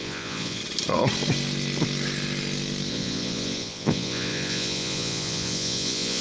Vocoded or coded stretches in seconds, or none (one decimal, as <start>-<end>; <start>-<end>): 0.0-0.6; 2.9-6.2